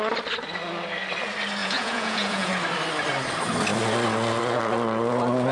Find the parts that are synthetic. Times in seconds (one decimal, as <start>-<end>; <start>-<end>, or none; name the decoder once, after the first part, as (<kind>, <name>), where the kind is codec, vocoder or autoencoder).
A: 1.6-2.5 (vocoder, Vocos)